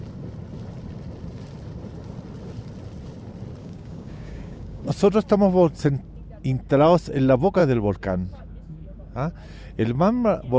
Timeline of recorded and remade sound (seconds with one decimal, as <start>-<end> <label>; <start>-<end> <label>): 0.0-3.6 recorded; 3.6-4.9 remade; 4.9-7.6 recorded; 7.6-9.0 remade; 9.0-10.6 recorded